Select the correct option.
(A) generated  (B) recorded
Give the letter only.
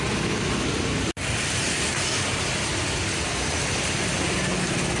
B